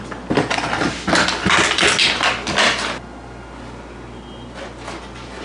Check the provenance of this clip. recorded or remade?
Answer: recorded